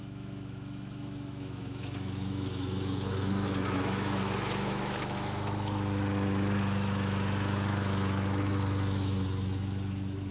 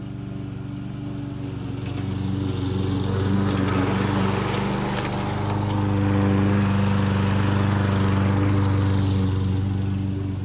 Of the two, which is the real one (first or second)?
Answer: second